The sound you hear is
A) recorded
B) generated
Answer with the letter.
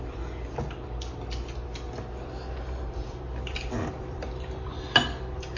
A